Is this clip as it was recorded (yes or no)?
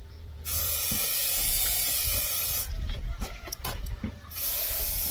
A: no